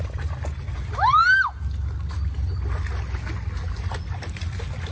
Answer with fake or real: real